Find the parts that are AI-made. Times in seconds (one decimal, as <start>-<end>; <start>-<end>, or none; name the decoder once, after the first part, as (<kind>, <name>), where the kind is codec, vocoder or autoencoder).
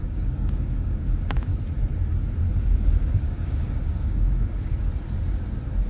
0.0-1.5 (codec, DAC); 2.6-4.9